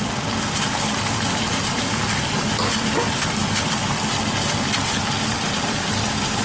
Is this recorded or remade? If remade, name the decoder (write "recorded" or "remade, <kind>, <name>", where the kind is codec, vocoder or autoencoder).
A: remade, vocoder, BigVGAN v2